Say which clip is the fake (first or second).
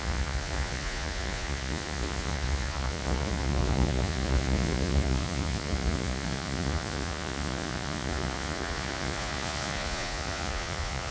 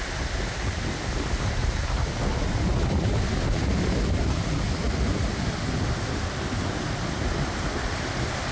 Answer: first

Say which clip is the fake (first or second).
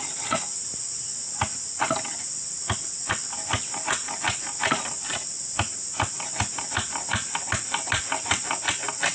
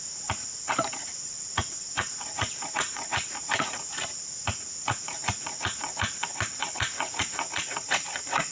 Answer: second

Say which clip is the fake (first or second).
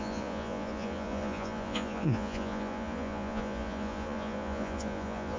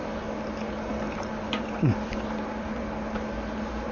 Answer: first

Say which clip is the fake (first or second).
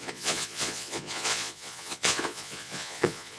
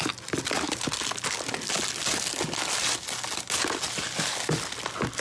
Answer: first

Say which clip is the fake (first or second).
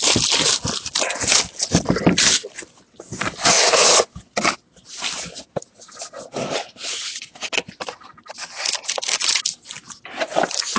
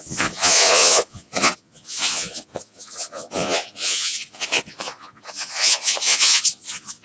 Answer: second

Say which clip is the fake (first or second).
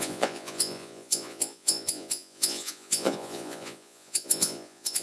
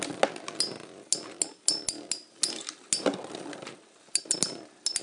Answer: first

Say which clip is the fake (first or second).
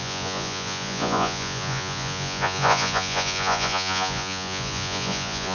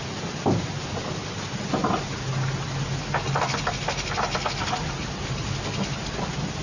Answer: first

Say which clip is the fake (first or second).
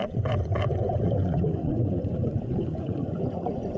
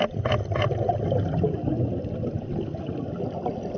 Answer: first